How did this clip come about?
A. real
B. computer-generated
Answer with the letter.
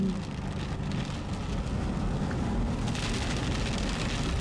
A